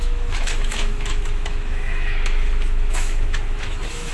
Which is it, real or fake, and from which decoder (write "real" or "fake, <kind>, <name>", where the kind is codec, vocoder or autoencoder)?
fake, autoencoder, DAC-VAE